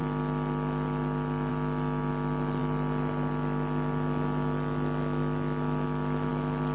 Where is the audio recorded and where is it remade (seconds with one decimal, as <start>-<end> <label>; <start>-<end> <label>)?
0.0-6.7 recorded